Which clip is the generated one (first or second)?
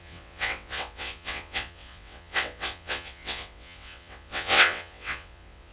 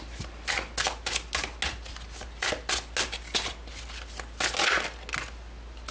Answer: first